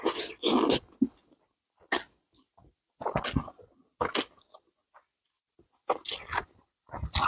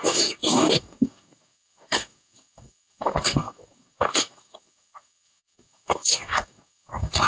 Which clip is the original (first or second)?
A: first